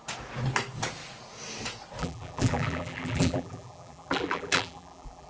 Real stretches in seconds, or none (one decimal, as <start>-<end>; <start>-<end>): 0.0-2.0